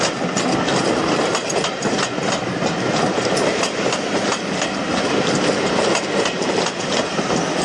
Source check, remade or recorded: recorded